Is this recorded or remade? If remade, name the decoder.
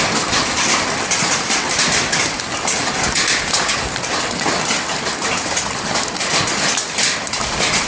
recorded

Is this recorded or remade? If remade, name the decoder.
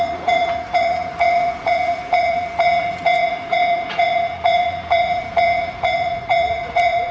remade, vocoder, Vocos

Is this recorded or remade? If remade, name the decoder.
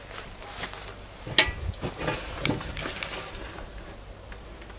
recorded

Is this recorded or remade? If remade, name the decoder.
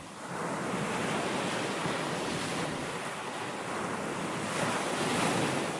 recorded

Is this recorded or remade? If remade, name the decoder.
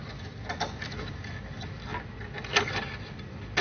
recorded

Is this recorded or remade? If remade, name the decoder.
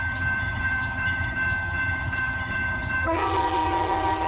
remade, vocoder, HiFi-GAN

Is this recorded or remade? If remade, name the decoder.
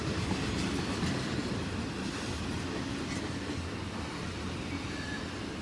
recorded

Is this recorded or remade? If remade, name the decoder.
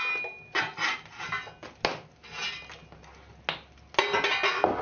recorded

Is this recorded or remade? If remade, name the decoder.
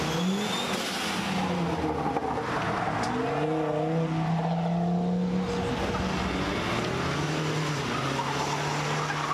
recorded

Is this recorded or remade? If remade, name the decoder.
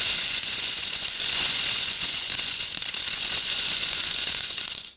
remade, vocoder, Vocos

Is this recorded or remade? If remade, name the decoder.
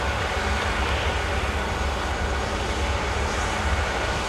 recorded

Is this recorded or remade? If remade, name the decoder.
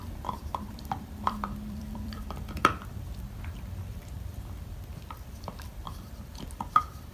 remade, vocoder, BigVGAN v2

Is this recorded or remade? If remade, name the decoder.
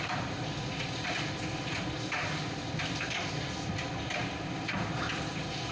recorded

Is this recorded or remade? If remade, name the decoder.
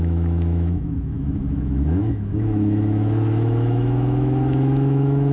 remade, autoencoder, DAC-VAE